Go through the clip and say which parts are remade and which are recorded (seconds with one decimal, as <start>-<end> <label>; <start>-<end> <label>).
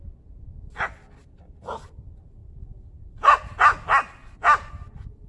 0.0-1.2 recorded; 1.2-2.0 remade; 2.0-5.3 recorded